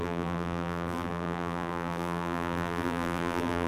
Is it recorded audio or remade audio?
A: remade